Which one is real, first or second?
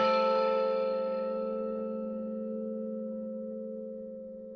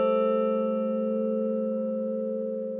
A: second